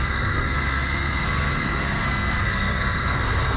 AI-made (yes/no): yes